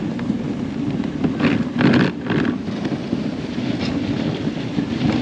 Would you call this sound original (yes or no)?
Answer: yes